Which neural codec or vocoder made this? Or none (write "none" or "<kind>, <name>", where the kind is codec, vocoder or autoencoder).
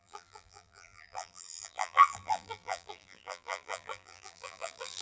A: vocoder, BigVGAN v2